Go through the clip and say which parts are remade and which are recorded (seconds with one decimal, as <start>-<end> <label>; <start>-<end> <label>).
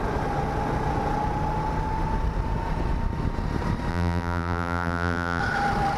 0.0-3.9 recorded; 3.9-5.4 remade; 5.4-6.0 recorded